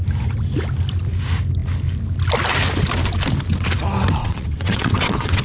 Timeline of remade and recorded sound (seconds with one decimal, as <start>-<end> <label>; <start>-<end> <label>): 0.0-4.2 recorded; 4.2-5.4 remade